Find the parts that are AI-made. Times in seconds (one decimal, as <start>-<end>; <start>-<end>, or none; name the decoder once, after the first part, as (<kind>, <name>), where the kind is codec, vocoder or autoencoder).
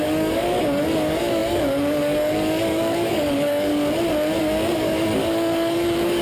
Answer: 0.0-3.7 (codec, DAC); 4.4-6.2